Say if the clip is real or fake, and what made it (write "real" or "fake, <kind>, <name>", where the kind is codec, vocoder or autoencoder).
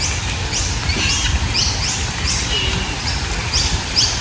real